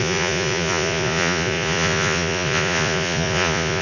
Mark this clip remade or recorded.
remade